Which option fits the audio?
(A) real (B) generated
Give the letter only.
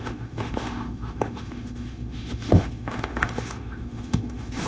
B